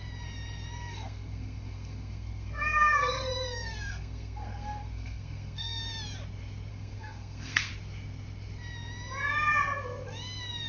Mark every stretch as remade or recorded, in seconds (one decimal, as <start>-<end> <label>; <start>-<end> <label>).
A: 0.0-0.9 recorded; 0.9-5.8 remade; 5.8-6.7 recorded; 6.7-7.7 remade; 7.7-10.7 recorded